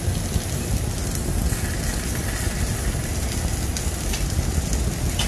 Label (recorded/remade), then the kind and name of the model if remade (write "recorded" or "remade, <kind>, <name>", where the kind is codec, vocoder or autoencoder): recorded